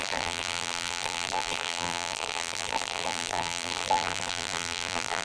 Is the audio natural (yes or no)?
no